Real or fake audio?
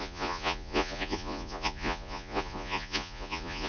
fake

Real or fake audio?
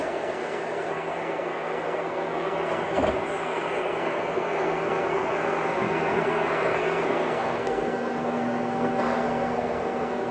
fake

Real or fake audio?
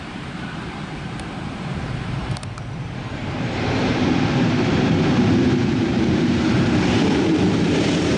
fake